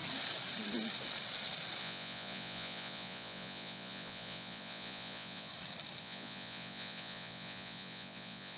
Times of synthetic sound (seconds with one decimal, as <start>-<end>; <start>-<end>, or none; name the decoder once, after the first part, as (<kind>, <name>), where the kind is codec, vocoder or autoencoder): 1.8-5.5 (vocoder, Vocos); 6.0-8.6